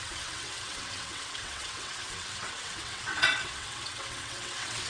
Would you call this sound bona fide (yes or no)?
no